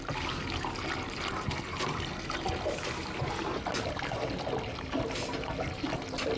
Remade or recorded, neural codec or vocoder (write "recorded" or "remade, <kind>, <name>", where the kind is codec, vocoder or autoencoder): recorded